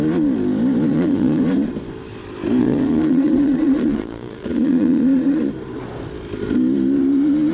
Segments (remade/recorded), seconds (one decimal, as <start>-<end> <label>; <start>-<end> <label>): 0.0-0.9 recorded; 0.9-1.4 remade; 1.4-2.6 recorded; 2.6-5.4 remade; 5.4-7.5 recorded